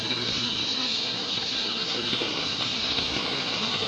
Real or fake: fake